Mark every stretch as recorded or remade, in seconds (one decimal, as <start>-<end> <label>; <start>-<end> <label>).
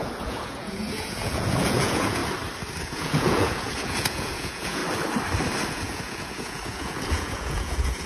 0.0-2.2 remade; 2.2-2.8 recorded; 2.8-4.8 remade; 4.8-5.7 recorded; 5.7-8.1 remade